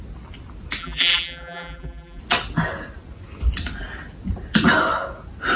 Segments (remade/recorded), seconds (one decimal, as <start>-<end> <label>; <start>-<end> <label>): 0.0-0.8 recorded; 0.8-2.2 remade; 2.2-5.6 recorded